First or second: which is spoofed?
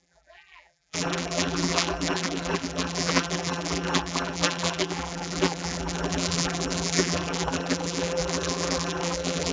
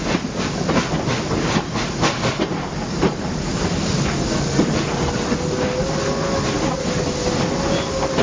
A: first